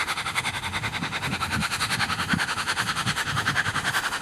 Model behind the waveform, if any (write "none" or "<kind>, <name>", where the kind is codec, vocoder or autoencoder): autoencoder, DAC-VAE